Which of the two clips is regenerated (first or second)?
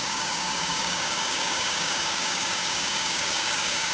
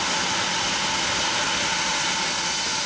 first